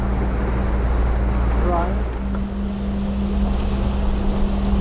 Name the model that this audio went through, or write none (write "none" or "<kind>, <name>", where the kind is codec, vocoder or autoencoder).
none